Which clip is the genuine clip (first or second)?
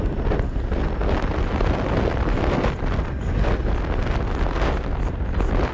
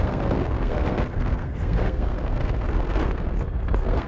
first